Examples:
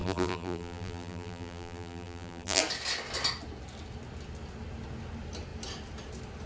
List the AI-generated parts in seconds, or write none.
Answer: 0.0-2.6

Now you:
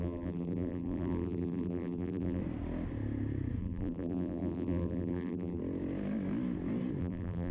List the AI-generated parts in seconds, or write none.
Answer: 0.0-2.4; 3.6-5.6; 7.0-7.5

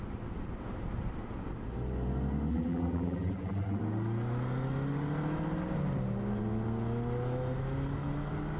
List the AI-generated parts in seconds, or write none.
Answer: 2.5-3.8

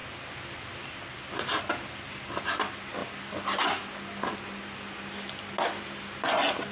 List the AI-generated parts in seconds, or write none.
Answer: none

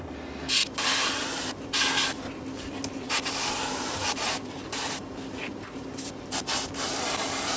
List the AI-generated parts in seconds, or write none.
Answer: 0.6-1.5; 4.0-5.0

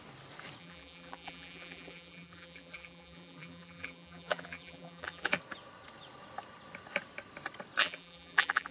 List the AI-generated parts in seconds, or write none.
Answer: 0.6-5.4; 7.8-8.7

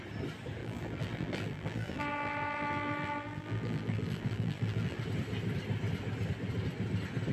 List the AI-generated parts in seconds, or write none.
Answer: 0.6-5.0

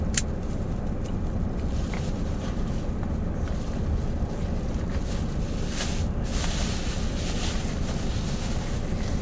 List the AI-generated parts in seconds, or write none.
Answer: 1.8-2.7